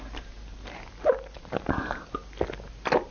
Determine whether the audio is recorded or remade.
recorded